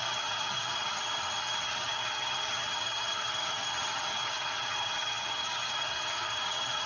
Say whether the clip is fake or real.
fake